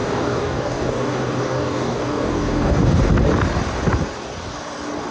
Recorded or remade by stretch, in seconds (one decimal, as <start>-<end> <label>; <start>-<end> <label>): 0.0-3.1 remade; 3.1-5.1 recorded